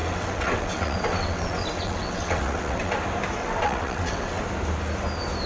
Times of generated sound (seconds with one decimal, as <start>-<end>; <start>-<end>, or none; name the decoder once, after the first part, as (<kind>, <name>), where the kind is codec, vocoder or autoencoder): 0.0-2.9 (vocoder, WaveNeXt); 3.4-4.4